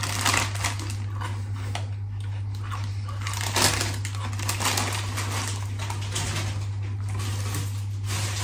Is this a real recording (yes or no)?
yes